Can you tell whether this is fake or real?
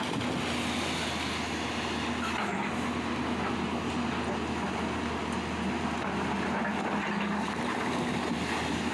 real